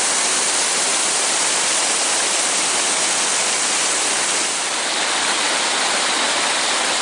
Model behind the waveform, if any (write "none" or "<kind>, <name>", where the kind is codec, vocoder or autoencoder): none